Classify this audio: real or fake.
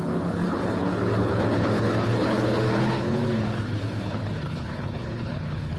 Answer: fake